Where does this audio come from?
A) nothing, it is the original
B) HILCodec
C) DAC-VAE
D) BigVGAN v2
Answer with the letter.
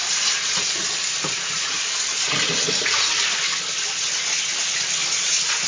A